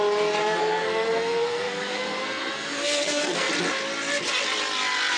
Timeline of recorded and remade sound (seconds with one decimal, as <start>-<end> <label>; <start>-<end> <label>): 0.0-0.4 recorded; 0.4-3.5 remade; 3.5-5.2 recorded